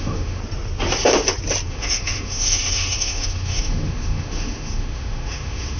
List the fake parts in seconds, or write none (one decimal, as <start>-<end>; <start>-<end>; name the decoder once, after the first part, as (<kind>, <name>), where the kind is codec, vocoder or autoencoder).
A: 0.0-0.4 (autoencoder, DAC-VAE); 1.7-5.8